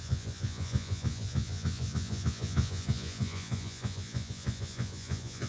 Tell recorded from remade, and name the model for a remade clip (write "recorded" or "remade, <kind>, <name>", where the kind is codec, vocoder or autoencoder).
remade, vocoder, Vocos